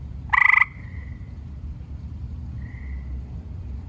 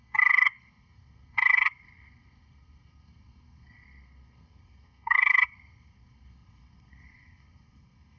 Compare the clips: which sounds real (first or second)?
first